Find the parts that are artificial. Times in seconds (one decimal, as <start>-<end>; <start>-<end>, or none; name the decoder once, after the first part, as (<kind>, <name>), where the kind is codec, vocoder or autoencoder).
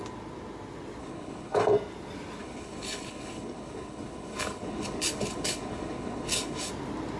1.0-1.6 (codec, HILCodec); 2.4-6.7